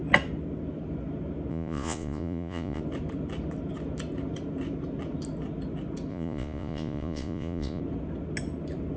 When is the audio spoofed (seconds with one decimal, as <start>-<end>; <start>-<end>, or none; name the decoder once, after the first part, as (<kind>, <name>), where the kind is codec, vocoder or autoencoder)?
1.5-2.8 (vocoder, Vocos); 6.1-7.8